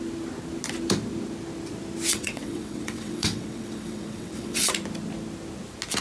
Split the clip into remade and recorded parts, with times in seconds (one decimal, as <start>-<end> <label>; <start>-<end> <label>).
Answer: 0.0-2.1 recorded; 2.1-4.7 remade; 4.7-6.0 recorded